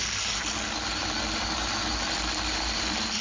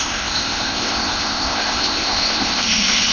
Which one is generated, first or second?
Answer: second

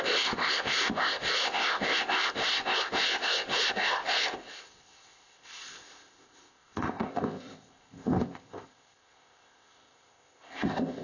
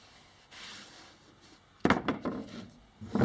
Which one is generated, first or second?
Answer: first